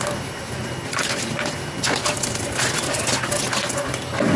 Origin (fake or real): real